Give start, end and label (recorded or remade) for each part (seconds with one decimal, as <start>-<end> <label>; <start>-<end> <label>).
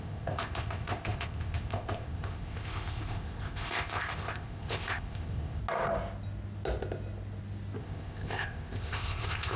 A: 0.0-5.6 remade; 5.6-7.8 recorded; 7.8-9.6 remade